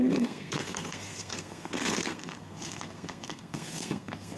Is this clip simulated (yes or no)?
yes